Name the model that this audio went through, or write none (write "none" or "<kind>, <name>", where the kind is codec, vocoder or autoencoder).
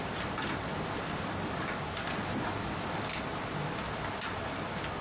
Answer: none